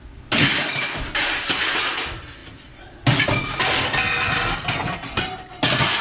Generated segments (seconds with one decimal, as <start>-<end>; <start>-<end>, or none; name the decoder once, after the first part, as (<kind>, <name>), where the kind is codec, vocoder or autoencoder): none